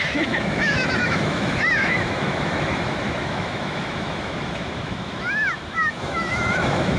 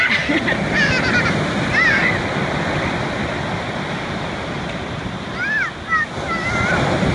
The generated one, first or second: first